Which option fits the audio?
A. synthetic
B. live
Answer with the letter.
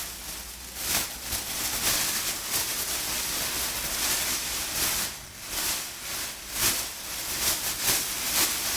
B